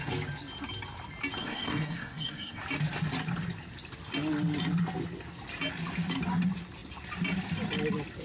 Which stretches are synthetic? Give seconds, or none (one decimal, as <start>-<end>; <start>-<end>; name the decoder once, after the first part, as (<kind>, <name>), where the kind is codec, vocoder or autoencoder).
1.4-2.6 (codec, SNAC)